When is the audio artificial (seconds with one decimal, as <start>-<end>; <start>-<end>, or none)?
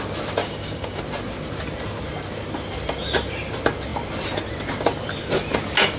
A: 0.4-1.0